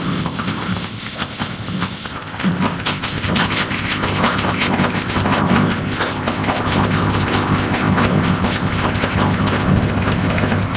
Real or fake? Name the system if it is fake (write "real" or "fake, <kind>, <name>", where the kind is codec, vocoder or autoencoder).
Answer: fake, codec, ZipCodec